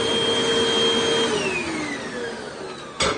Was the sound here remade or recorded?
recorded